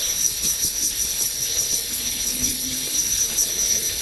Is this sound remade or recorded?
remade